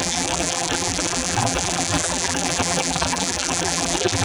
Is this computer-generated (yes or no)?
yes